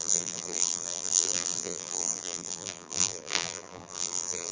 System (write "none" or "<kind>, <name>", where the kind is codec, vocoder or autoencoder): vocoder, BigVGAN v2